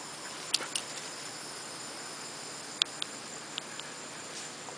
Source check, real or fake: real